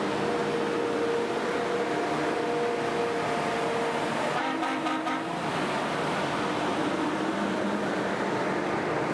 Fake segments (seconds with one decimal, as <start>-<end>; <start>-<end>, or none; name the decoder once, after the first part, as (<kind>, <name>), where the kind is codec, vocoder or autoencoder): 0.0-0.4 (vocoder, BigVGAN v2); 4.2-9.1